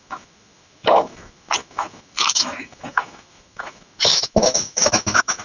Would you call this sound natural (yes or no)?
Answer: no